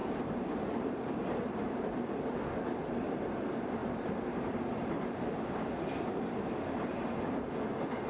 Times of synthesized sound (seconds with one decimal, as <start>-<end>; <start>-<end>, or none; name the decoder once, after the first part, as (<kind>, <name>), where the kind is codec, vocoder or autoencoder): 0.0-2.0 (vocoder, BigVGAN v2); 3.8-5.3